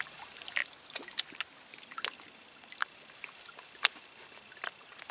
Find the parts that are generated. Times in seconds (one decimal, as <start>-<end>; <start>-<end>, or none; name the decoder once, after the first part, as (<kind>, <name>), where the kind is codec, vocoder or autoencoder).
none